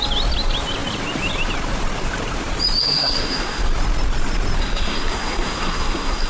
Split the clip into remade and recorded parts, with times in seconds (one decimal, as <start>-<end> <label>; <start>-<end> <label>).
0.0-2.8 recorded; 2.8-3.6 remade; 3.6-4.6 recorded; 4.6-6.3 remade